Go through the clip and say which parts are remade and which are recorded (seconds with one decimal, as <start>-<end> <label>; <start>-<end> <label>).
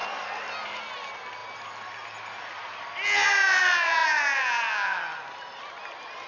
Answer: 0.0-6.3 recorded